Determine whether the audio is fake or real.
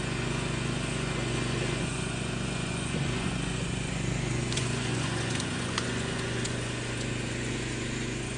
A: fake